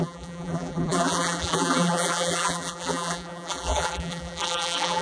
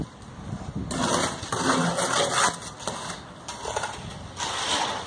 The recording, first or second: second